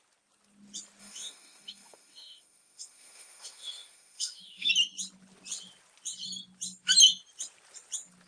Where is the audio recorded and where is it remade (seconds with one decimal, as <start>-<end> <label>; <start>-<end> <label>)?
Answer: 0.0-1.0 recorded; 1.0-4.7 remade; 4.7-8.3 recorded